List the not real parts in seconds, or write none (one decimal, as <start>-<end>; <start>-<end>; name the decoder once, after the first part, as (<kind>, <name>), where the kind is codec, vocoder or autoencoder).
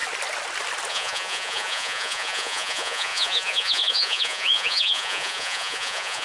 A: 0.9-6.2 (vocoder, Vocos)